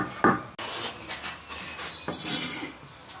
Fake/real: real